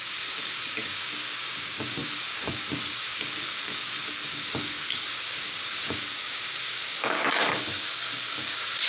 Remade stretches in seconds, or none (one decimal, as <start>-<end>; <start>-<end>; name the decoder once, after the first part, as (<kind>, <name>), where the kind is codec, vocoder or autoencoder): 0.0-8.9 (codec, DAC)